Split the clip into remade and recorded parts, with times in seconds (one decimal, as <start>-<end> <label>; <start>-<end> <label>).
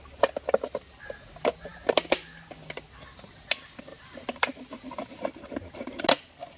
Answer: 0.0-3.9 recorded; 3.9-6.0 remade; 6.0-6.6 recorded